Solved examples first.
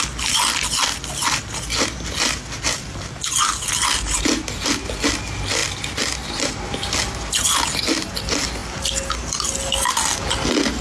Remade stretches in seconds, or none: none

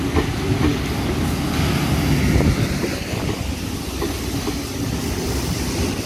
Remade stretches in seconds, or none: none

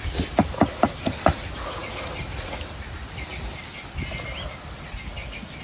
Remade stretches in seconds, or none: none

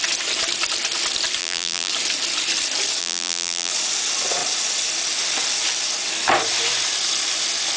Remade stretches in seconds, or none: 1.4-1.9 (vocoder, BigVGAN v2); 3.0-3.7